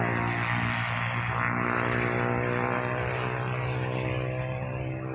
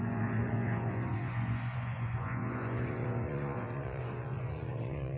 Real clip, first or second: first